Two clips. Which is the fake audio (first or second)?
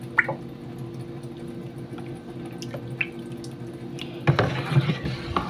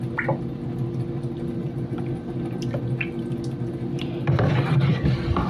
second